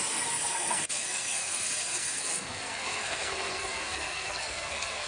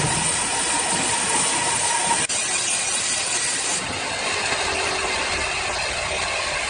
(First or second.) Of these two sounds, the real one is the second